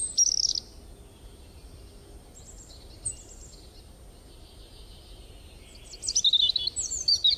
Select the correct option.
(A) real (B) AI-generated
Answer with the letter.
A